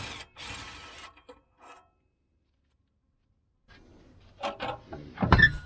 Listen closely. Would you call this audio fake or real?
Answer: real